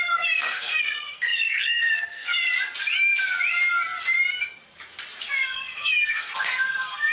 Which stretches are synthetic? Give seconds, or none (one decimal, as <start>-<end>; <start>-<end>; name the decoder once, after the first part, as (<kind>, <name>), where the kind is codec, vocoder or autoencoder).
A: 0.0-2.4 (codec, SNAC); 5.2-7.1